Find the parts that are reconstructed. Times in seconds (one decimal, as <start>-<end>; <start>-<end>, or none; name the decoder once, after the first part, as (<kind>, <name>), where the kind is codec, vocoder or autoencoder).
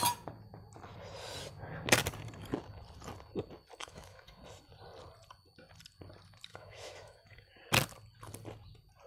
3.8-4.4 (autoencoder, DAC-VAE); 6.5-7.6